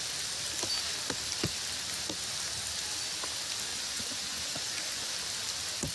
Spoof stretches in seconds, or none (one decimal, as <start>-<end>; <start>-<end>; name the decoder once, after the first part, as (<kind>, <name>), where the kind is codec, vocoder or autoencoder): 3.7-5.1 (vocoder, Vocos)